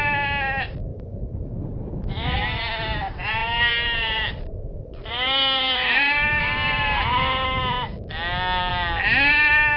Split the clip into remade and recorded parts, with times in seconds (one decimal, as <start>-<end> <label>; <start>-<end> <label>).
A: 0.0-0.9 recorded; 0.9-2.6 remade; 2.6-3.4 recorded; 3.4-6.4 remade; 6.4-9.8 recorded

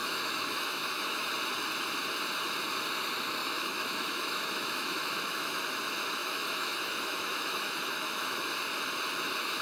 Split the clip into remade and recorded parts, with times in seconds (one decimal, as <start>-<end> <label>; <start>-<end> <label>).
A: 0.0-1.3 remade; 1.3-3.4 recorded; 3.4-5.6 remade; 5.6-6.2 recorded; 6.2-8.5 remade; 8.5-9.6 recorded

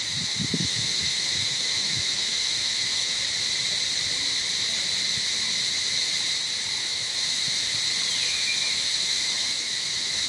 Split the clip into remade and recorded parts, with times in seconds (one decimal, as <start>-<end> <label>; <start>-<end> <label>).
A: 0.0-3.2 remade; 3.2-6.8 recorded; 6.8-7.7 remade; 7.7-8.3 recorded; 8.3-10.3 remade

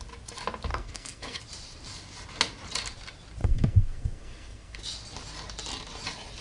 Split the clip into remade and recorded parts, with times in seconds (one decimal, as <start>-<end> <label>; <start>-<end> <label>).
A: 0.0-0.7 recorded; 0.7-1.4 remade; 1.4-3.4 recorded; 3.4-4.8 remade; 4.8-6.4 recorded